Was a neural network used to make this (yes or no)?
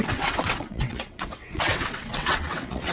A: yes